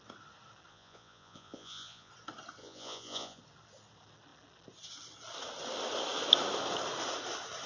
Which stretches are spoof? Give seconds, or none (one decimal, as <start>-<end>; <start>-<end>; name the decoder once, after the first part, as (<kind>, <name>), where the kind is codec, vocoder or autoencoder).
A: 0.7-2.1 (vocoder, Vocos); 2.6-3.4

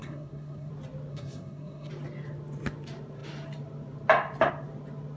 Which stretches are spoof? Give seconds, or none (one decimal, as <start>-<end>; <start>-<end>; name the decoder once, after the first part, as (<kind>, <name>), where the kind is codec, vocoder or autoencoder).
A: 0.0-0.7 (codec, SNAC); 1.1-1.9

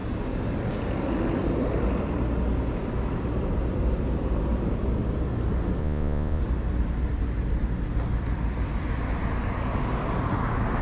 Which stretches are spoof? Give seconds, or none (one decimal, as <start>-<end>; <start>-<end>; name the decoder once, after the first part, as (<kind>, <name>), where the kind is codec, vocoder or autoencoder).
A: 5.8-6.4 (vocoder, Vocos)